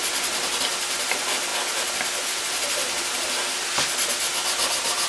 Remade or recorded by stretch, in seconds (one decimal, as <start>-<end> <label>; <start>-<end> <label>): 0.0-5.1 recorded